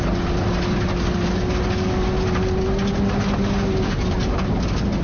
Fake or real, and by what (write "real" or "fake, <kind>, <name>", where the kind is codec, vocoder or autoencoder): real